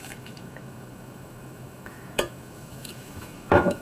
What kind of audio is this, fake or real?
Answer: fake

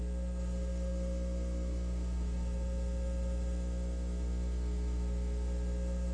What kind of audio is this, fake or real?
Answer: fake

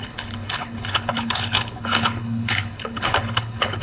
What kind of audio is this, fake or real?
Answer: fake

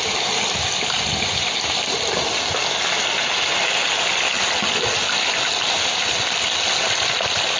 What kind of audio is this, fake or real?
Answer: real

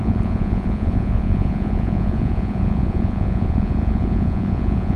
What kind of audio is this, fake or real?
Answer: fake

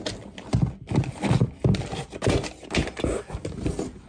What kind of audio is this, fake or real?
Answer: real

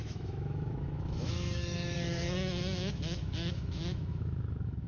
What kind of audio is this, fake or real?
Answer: fake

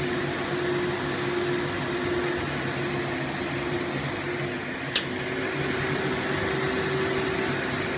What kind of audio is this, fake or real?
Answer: real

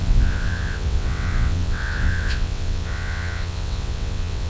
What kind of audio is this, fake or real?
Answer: fake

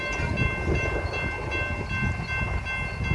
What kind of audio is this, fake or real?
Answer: real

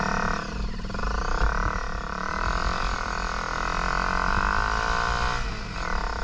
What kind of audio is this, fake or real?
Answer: real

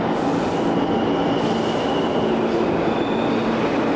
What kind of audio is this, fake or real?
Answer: real